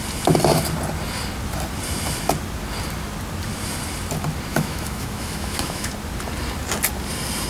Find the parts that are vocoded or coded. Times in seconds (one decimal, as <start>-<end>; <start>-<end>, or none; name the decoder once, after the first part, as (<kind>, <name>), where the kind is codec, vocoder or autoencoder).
4.5-5.9 (autoencoder, DAC-VAE)

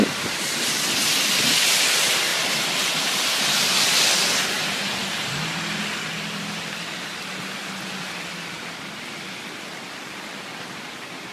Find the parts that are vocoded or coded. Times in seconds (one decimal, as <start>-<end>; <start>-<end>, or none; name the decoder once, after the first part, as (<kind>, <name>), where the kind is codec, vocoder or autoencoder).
none

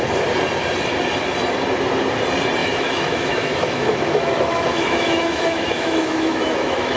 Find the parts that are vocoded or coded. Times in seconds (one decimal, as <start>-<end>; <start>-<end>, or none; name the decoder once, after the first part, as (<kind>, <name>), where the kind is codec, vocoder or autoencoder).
2.6-7.0 (autoencoder, DAC-VAE)

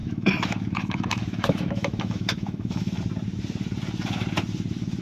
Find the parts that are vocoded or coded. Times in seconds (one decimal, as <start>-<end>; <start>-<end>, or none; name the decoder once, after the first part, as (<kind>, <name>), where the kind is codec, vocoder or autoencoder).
0.0-3.0 (autoencoder, DAC-VAE)

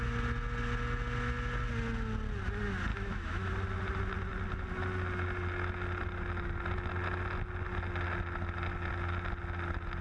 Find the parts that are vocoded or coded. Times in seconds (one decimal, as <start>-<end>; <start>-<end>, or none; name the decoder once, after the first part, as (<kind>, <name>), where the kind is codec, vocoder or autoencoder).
2.9-3.5 (autoencoder, DAC-VAE)

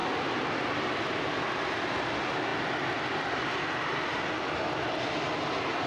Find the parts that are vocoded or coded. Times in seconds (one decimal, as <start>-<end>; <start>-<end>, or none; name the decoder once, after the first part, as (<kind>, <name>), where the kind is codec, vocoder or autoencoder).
none

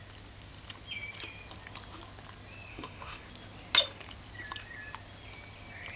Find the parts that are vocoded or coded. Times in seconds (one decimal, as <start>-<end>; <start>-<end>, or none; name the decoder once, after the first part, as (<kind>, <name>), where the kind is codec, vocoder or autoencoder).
2.7-3.3 (autoencoder, DAC-VAE)